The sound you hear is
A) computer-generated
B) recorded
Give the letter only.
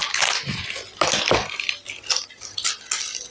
B